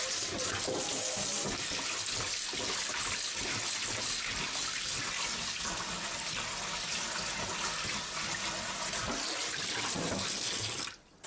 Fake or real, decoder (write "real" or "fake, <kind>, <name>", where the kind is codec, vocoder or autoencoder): real